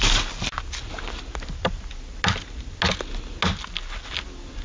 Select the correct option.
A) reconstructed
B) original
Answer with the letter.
B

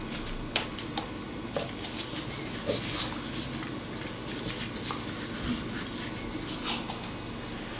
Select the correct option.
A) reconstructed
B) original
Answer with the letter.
B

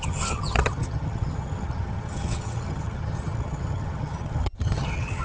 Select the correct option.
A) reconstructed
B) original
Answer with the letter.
A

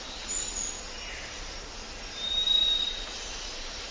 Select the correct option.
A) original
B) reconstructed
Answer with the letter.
A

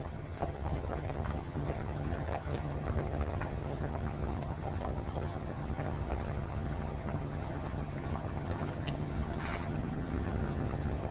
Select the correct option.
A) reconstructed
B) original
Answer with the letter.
A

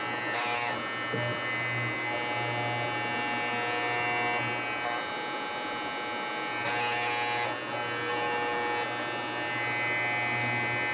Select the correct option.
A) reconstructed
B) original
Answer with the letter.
B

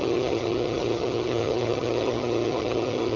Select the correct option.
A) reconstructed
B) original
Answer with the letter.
A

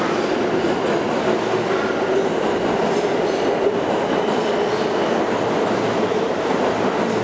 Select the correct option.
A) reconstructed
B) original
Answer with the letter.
B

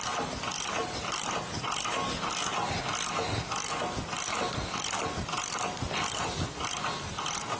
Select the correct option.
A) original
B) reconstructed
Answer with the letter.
A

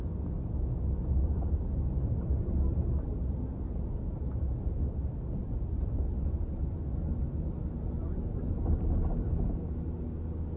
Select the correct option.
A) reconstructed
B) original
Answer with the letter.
B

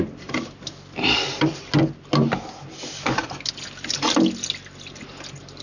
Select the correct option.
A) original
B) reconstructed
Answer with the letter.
A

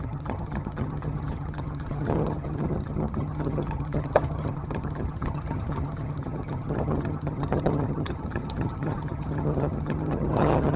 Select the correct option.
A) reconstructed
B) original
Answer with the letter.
A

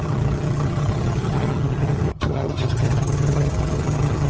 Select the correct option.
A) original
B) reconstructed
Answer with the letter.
B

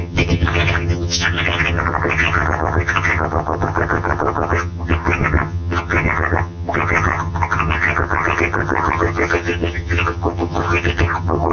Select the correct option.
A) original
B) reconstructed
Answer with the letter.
B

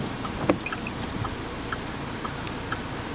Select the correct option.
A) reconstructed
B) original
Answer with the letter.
B